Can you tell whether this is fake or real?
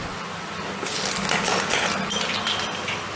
real